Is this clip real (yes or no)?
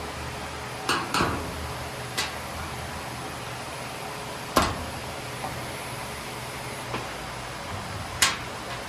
yes